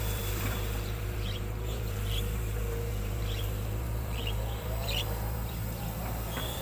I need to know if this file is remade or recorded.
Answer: remade